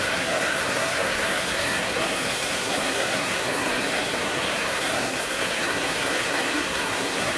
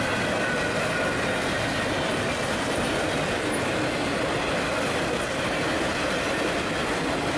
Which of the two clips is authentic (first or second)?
second